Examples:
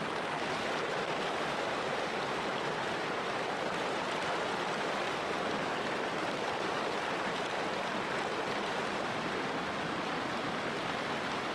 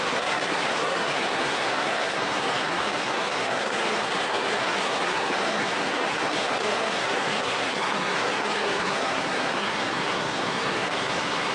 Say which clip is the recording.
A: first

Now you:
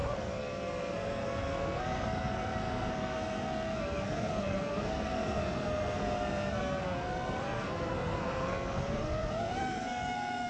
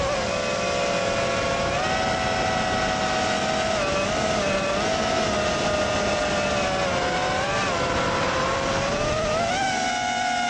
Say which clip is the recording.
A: second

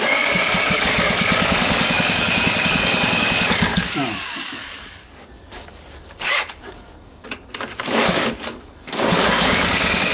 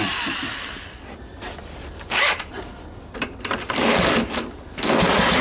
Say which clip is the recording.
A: second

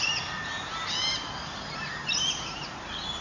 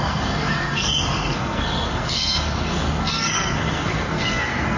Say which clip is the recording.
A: first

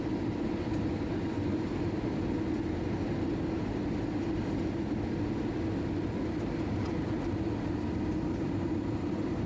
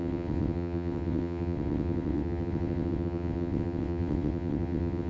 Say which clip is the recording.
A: first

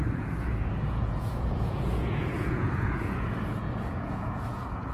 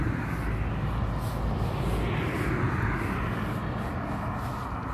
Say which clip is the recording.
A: second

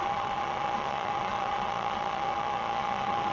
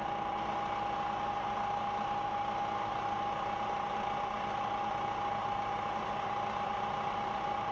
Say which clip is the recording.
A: second